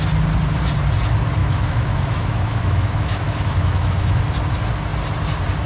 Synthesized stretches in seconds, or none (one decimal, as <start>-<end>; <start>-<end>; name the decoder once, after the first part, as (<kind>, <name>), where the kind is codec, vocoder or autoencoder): 1.4-4.2 (autoencoder, DAC-VAE)